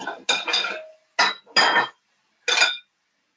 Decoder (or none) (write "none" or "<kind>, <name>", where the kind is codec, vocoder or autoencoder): none